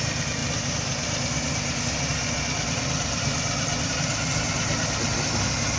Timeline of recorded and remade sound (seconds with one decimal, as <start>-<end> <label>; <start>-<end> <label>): 0.0-5.8 recorded